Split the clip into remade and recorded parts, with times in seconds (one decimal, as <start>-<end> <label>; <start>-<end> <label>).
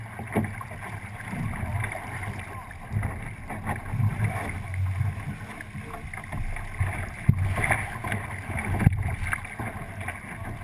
0.0-10.6 recorded